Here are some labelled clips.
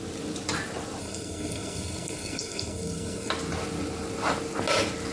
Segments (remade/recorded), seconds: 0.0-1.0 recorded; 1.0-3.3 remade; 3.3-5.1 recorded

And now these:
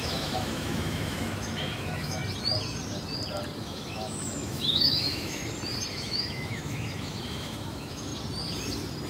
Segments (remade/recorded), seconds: 0.0-2.2 remade; 2.2-3.6 recorded; 3.6-5.4 remade; 5.4-5.9 recorded; 5.9-8.1 remade; 8.1-9.1 recorded

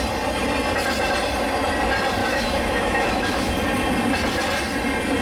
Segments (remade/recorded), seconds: 0.0-2.2 recorded; 2.2-3.5 remade; 3.5-5.2 recorded

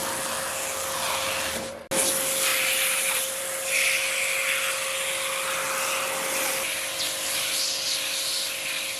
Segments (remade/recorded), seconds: 0.0-2.5 recorded; 2.5-3.4 remade; 3.4-9.0 recorded